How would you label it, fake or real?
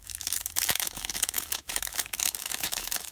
fake